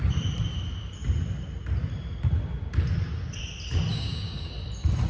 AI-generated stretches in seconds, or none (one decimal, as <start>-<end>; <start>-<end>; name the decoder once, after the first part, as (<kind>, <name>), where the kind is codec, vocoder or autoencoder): 3.9-4.5 (codec, DAC)